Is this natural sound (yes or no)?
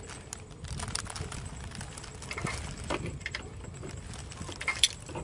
yes